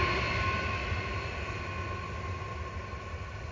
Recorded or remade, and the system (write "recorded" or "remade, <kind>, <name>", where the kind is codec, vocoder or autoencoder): recorded